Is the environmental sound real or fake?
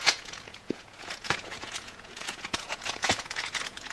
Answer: fake